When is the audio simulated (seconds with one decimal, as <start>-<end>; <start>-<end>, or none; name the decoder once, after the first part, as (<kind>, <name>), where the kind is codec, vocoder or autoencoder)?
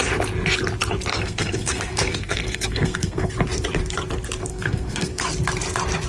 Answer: 1.1-3.3 (codec, SNAC); 4.5-5.2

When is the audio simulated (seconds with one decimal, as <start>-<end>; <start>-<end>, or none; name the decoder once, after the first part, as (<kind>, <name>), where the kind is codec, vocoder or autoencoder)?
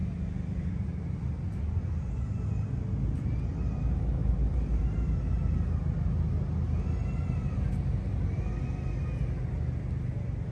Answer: none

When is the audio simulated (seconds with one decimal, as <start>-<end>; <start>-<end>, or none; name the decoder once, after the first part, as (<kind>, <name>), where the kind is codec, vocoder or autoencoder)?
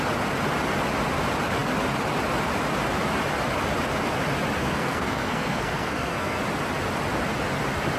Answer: 4.6-6.4 (codec, SNAC)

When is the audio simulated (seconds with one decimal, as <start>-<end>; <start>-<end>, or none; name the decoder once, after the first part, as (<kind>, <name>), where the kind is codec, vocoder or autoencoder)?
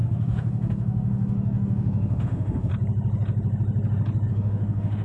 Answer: 0.0-2.7 (autoencoder, DAC-VAE); 4.3-5.0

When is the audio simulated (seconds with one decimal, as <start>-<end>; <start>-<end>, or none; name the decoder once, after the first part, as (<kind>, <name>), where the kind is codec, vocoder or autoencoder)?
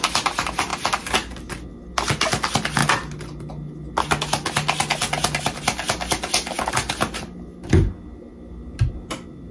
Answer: none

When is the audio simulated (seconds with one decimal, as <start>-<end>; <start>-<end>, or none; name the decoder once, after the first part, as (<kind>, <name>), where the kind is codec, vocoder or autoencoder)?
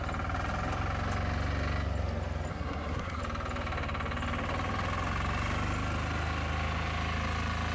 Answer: 2.5-3.2 (codec, SNAC)